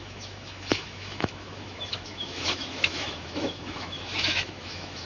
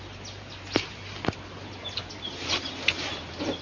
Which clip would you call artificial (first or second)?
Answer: first